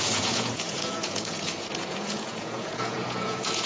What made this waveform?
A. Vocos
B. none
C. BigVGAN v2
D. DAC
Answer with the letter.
A